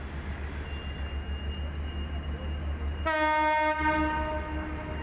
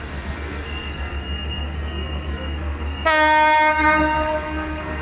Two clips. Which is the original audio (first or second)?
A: first